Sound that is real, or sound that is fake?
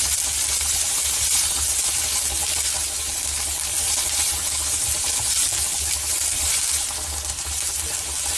real